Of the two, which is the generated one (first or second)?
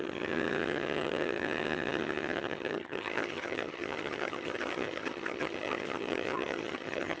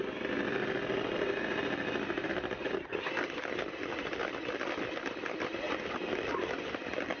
first